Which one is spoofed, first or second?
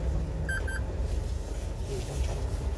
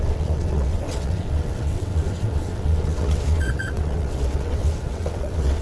second